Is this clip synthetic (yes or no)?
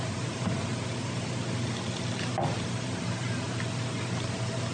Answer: no